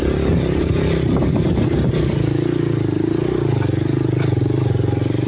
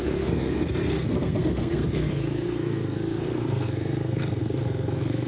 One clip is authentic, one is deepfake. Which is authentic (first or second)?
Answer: first